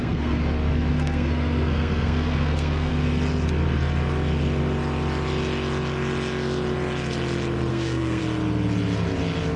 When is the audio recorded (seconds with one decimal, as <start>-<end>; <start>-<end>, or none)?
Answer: 0.4-0.9; 2.9-7.7; 8.2-9.6